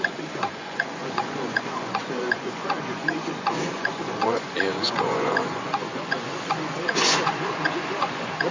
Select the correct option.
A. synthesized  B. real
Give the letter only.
A